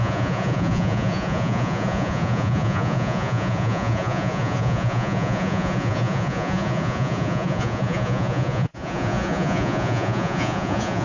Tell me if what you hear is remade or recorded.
remade